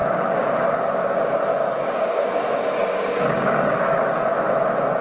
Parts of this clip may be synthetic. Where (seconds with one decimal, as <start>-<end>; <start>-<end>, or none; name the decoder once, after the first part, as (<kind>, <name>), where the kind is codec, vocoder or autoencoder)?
0.0-0.8 (codec, DAC); 1.5-2.4; 2.8-4.3